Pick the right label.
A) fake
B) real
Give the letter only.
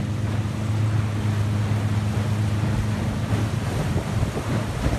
B